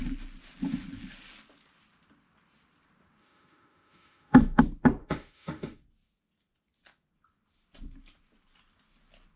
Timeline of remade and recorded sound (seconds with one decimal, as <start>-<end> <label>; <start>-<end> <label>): 0.0-3.2 recorded; 3.2-4.6 remade; 4.6-5.0 recorded; 5.0-5.8 remade; 5.8-9.4 recorded

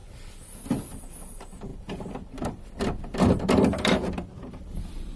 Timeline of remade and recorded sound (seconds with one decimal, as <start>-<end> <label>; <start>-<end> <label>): 0.0-1.0 recorded; 1.0-5.2 remade